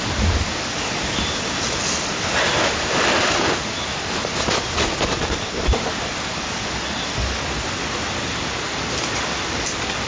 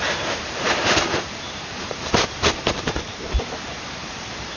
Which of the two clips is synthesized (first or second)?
second